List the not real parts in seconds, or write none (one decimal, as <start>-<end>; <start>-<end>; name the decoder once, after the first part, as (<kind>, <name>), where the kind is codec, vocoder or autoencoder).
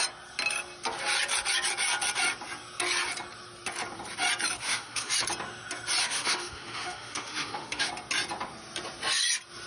4.6-5.1 (autoencoder, DAC-VAE); 6.0-7.9